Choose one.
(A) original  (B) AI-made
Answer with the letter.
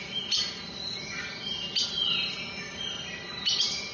A